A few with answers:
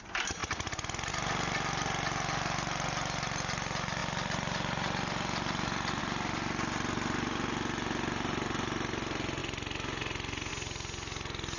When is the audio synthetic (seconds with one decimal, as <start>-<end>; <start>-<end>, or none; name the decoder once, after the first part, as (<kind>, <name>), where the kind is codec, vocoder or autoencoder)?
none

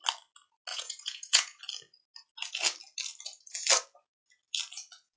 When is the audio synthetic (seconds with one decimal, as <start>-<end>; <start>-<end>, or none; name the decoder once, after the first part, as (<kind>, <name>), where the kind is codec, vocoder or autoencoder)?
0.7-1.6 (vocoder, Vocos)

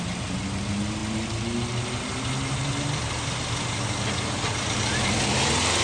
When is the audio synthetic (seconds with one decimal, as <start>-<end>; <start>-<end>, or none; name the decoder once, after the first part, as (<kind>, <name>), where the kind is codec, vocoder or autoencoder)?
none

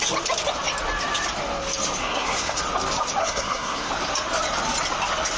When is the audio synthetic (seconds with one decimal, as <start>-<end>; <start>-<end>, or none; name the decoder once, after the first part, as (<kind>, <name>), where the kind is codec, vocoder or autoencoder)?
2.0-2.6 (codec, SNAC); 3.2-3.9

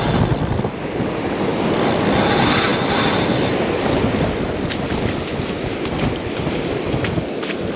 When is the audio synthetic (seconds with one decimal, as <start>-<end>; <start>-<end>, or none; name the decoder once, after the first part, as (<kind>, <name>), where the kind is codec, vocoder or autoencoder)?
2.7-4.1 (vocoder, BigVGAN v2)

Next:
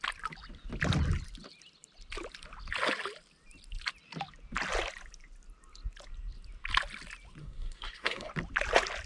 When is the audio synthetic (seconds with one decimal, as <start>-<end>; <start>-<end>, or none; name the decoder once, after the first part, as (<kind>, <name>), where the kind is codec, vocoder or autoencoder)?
7.4-8.3 (codec, SNAC)